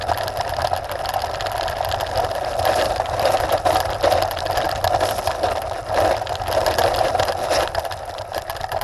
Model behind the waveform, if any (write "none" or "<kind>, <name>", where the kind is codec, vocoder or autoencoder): none